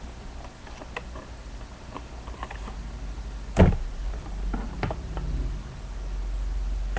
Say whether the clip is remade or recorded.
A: recorded